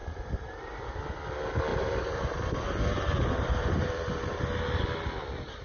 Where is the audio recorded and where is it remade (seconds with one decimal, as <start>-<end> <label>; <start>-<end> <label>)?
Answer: 0.0-1.0 remade; 1.0-1.7 recorded; 1.7-4.4 remade; 4.4-5.6 recorded